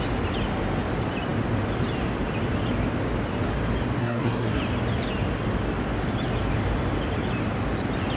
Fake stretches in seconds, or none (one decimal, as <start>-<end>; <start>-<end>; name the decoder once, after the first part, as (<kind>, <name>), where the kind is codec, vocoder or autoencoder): 4.0-4.6 (codec, SNAC)